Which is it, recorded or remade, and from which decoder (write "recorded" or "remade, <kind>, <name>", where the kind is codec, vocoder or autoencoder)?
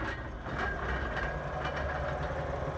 recorded